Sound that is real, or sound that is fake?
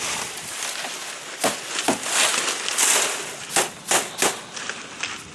real